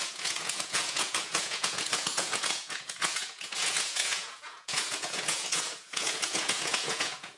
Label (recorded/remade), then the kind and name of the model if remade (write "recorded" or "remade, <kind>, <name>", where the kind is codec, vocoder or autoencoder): remade, vocoder, Vocos